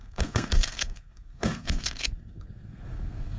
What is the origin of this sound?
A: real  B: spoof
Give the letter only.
B